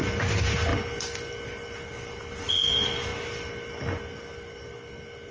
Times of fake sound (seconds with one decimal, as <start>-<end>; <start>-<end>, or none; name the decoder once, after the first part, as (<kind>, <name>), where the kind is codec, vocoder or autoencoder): none